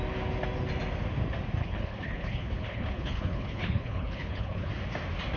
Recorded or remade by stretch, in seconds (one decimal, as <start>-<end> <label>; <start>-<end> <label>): 0.0-1.6 recorded; 1.6-4.7 remade; 4.7-5.4 recorded